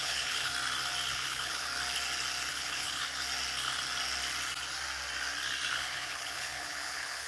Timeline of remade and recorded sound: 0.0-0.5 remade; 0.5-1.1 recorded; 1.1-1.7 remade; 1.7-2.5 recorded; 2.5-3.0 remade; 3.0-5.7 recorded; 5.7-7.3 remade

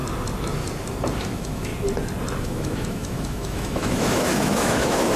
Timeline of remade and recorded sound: 0.0-1.2 recorded; 1.2-1.7 remade; 1.7-2.4 recorded; 2.4-5.2 remade

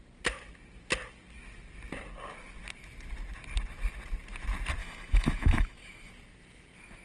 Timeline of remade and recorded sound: 0.0-4.8 recorded; 4.8-6.1 remade; 6.1-7.0 recorded

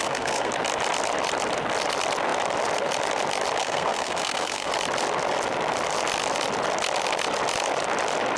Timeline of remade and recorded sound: 0.0-0.5 remade; 0.5-3.6 recorded; 3.6-4.7 remade; 4.7-8.4 recorded

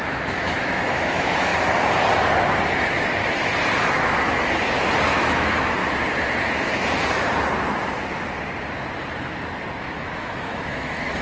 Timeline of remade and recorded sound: 0.0-1.5 remade; 1.5-5.2 recorded; 5.2-5.8 remade; 5.8-9.8 recorded; 9.8-11.2 remade

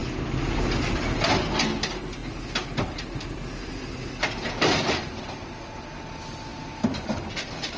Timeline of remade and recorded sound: 0.0-7.8 recorded